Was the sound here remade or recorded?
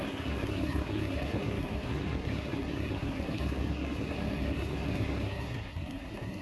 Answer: remade